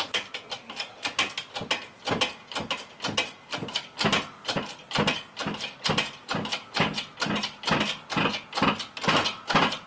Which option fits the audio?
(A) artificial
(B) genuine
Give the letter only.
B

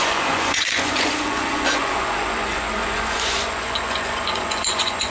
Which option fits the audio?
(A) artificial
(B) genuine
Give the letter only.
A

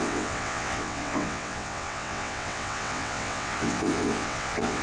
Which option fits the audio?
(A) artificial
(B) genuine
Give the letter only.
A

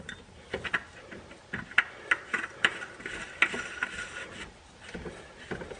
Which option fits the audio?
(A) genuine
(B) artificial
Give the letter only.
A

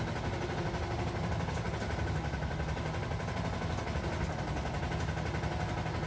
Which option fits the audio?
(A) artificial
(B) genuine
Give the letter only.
B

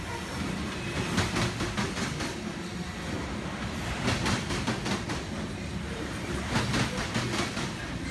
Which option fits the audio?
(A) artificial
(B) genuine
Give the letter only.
B